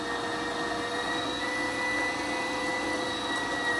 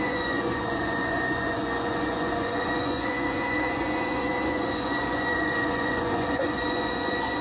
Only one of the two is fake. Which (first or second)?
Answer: second